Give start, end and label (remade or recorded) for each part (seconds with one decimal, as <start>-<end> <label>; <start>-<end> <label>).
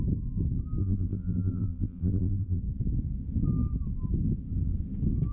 0.0-0.8 recorded; 0.8-2.6 remade; 2.6-5.3 recorded